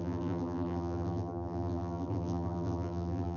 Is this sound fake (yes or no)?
yes